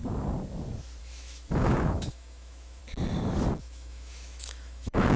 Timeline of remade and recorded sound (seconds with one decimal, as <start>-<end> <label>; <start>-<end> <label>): 0.0-1.0 recorded; 1.0-2.8 remade; 2.8-3.6 recorded; 3.6-5.2 remade